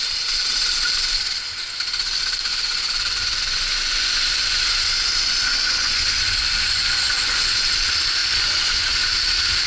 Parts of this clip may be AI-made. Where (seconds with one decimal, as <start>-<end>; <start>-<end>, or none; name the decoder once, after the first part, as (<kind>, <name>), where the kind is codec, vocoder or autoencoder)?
2.5-7.7 (vocoder, Vocos); 8.2-8.9

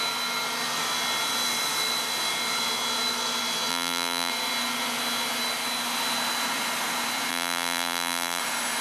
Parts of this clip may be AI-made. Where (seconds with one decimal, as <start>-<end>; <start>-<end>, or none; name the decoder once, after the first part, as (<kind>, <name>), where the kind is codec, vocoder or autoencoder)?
3.7-4.3 (vocoder, BigVGAN v2); 7.3-8.4

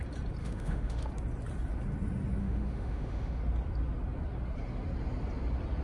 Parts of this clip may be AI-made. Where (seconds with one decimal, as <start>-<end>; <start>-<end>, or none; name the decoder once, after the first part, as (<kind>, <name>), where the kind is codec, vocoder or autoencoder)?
0.4-1.1 (autoencoder, DAC-VAE); 2.4-3.4

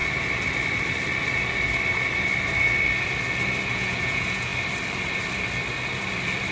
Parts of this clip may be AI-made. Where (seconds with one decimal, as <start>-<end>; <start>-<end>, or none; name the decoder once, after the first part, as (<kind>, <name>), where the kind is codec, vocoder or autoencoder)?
3.7-4.5 (vocoder, Vocos)